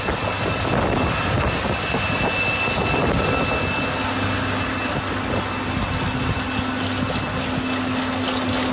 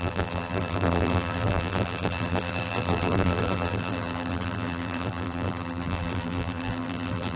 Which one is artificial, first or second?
second